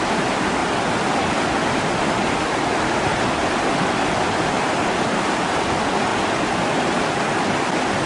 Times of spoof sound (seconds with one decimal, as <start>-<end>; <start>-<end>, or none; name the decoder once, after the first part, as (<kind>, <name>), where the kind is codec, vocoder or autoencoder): none